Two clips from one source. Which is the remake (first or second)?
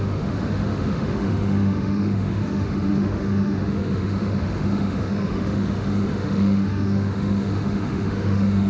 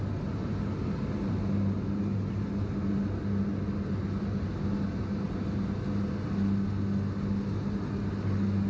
first